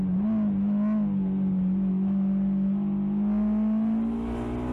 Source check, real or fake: real